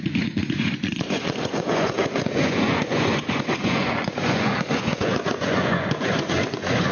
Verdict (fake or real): fake